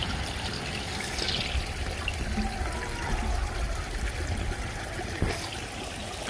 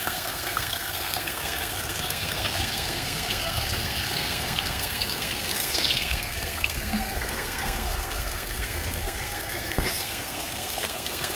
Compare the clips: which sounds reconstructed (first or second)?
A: second